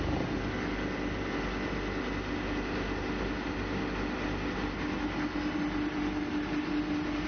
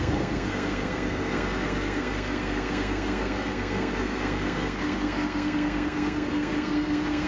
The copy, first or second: second